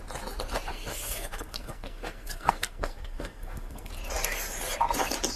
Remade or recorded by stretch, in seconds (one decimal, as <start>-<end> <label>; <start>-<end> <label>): 0.0-0.7 recorded; 0.7-3.9 remade; 3.9-5.4 recorded